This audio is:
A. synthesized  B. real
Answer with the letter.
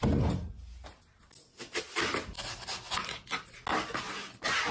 B